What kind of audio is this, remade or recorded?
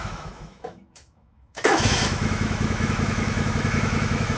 remade